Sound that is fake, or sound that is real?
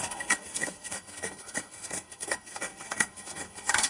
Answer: fake